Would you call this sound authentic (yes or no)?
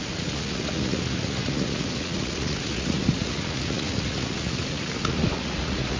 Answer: no